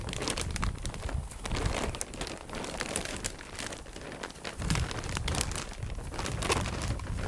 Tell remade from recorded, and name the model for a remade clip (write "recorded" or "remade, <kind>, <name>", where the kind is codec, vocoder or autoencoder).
recorded